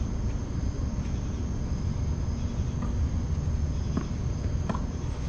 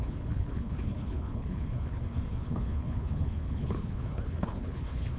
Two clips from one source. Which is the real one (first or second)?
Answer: first